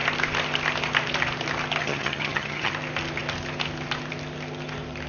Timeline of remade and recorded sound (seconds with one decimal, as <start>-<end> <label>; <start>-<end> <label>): 0.0-1.8 recorded; 1.8-2.7 remade; 2.7-5.1 recorded